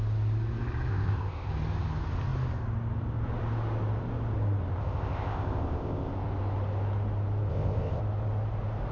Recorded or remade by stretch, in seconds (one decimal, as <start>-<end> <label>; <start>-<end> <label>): 0.0-0.9 recorded; 0.9-1.5 remade; 1.5-4.8 recorded; 4.8-6.1 remade; 6.1-7.5 recorded; 7.5-8.0 remade; 8.0-8.9 recorded